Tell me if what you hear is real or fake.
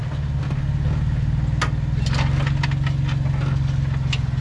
real